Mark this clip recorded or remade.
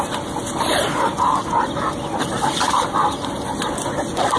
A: recorded